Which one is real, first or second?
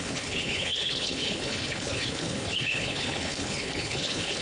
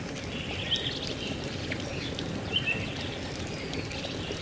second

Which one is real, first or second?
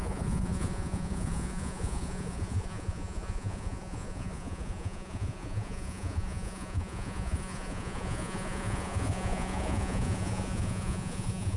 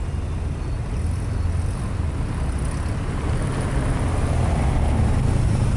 second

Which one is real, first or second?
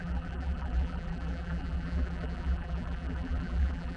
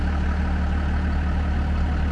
second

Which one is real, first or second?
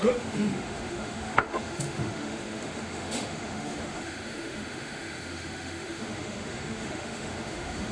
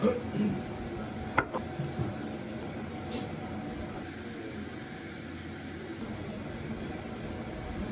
second